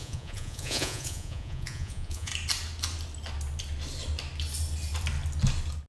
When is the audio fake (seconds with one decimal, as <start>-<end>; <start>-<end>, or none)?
0.0-2.3